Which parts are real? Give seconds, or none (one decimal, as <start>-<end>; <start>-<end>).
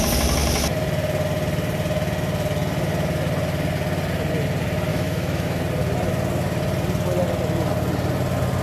0.0-4.9; 5.6-8.6